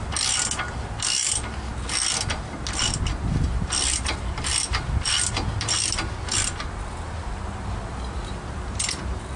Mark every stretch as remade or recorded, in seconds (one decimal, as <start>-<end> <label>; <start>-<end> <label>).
0.0-9.4 recorded